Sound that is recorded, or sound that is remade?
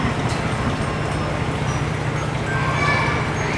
recorded